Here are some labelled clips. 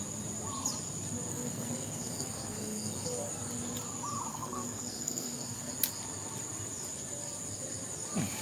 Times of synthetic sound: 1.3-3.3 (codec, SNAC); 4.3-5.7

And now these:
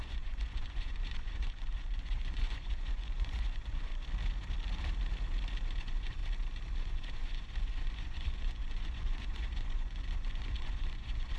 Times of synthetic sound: 0.0-3.9 (vocoder, Vocos); 5.8-6.2; 6.8-11.4

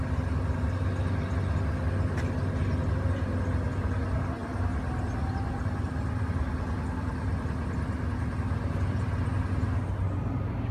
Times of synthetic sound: none

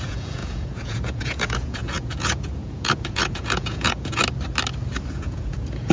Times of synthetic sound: 0.0-4.2 (vocoder, Vocos); 5.1-5.9

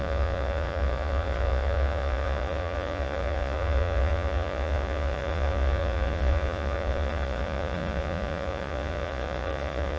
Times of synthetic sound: 0.0-10.0 (vocoder, Vocos)